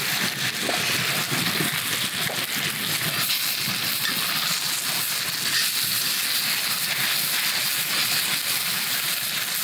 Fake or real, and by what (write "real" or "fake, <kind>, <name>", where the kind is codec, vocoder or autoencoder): real